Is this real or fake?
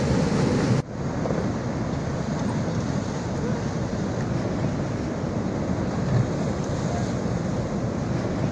real